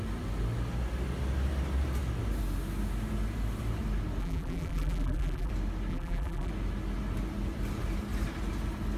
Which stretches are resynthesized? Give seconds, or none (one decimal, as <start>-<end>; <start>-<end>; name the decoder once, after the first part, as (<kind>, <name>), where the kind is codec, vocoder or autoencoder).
4.2-5.5 (vocoder, BigVGAN v2); 5.9-6.5